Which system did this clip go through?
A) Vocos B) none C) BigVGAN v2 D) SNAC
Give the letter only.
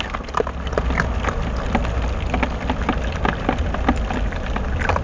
B